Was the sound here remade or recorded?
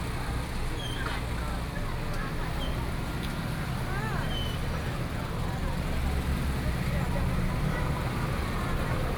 recorded